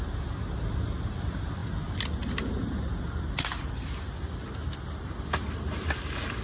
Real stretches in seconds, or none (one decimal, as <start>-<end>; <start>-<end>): 0.0-6.4